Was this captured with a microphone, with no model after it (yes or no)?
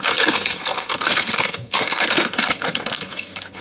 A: no